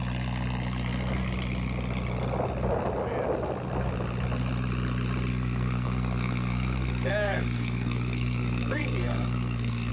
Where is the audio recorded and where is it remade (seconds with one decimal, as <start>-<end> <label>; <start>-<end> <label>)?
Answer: 0.0-5.3 recorded; 5.3-9.9 remade